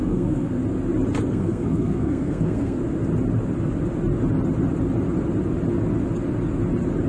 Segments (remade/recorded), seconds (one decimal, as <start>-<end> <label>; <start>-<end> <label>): 0.0-0.6 remade; 0.6-1.3 recorded; 1.3-2.8 remade; 2.8-7.1 recorded